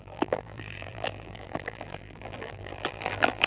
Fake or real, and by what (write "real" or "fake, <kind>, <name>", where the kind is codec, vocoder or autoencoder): fake, vocoder, BigVGAN v2